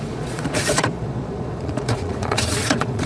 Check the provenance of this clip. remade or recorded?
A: remade